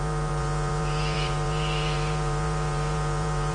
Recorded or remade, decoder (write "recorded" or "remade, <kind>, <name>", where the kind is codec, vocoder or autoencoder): remade, vocoder, Vocos